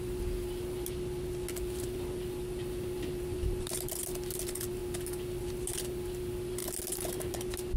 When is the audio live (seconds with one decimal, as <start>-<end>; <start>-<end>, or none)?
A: 0.0-7.8